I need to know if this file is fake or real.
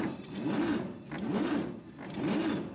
real